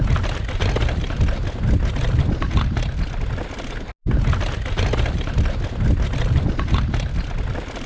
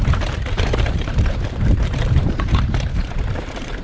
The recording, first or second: first